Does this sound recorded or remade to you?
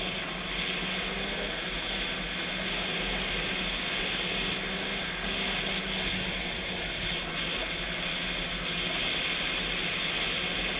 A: recorded